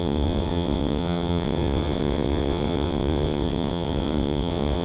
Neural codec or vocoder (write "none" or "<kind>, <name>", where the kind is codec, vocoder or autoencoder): vocoder, WaveNeXt